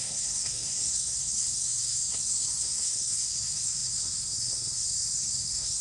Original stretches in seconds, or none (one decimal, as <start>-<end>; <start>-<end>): none